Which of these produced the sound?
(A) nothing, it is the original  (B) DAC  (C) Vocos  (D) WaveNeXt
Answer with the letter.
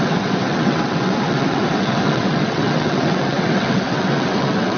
D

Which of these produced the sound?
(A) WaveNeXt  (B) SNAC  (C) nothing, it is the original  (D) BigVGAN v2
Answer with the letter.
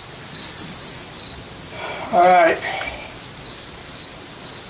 C